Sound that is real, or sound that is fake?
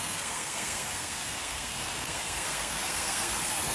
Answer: fake